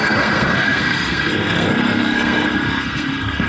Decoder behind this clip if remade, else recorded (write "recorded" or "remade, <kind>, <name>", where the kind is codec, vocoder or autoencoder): remade, codec, SNAC